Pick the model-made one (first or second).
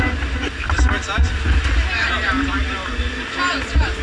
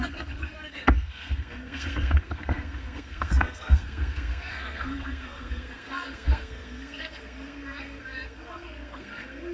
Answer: second